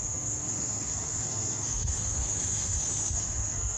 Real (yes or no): no